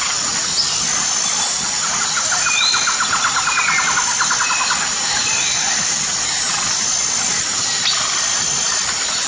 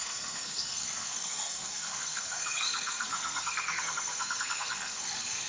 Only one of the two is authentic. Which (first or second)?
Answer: first